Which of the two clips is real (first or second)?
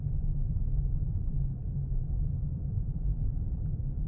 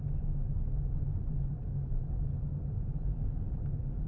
second